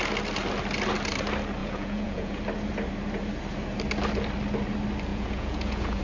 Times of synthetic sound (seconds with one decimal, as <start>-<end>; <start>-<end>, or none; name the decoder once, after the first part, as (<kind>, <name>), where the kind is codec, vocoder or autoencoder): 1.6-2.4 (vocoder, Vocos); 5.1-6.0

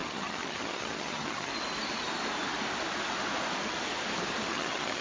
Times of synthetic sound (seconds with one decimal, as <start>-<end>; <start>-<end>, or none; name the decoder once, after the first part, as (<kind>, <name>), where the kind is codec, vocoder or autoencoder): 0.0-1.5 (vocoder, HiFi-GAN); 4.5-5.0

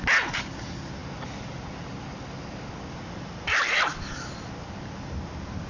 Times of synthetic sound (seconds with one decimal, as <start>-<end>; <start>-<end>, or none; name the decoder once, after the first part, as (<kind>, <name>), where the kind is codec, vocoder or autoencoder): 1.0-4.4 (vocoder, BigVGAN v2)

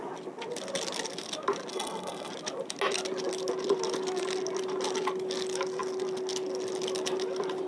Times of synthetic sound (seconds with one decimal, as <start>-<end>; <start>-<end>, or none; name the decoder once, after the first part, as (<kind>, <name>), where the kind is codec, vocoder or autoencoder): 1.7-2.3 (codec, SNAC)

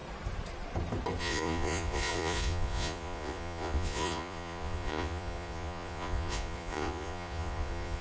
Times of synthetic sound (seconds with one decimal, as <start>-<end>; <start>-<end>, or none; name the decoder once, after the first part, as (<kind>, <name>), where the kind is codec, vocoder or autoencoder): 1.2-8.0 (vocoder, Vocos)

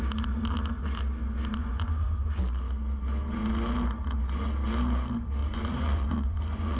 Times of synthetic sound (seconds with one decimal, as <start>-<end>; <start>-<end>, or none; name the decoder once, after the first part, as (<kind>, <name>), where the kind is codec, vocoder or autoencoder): 1.6-2.4 (vocoder, Vocos); 5.4-6.8

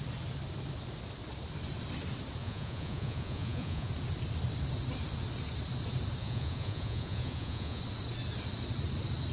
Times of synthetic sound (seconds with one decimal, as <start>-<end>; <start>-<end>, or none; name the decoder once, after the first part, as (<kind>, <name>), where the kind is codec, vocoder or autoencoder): 2.4-3.9 (vocoder, Vocos); 6.2-7.8

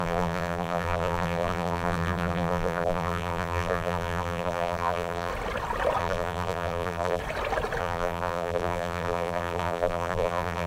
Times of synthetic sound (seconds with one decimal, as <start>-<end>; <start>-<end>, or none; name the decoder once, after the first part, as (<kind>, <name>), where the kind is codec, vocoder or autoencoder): 0.0-5.3 (vocoder, BigVGAN v2); 6.0-7.2; 7.8-10.7